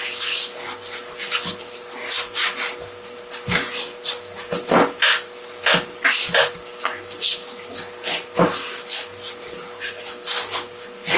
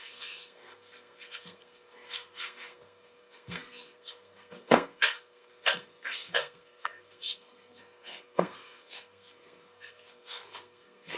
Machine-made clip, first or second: second